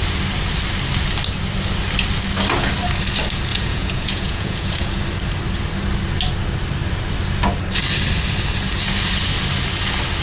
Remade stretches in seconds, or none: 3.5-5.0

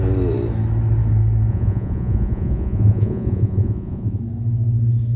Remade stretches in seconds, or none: 1.5-4.2

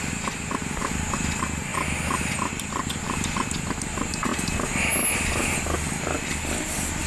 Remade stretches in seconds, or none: none

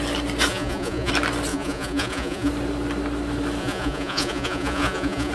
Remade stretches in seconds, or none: 0.5-1.1; 1.5-2.5; 3.6-5.3

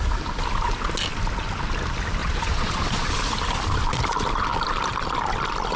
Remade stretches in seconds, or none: 2.2-3.1

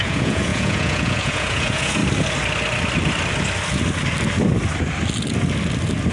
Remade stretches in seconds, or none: 0.0-2.0